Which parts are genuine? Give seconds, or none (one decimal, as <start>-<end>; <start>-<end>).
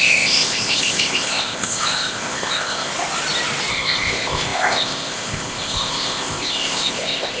2.9-3.7